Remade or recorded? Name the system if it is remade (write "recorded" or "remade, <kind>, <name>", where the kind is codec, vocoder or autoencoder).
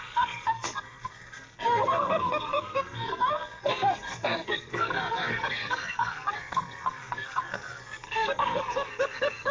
remade, codec, SNAC